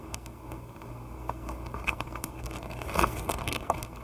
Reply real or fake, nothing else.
fake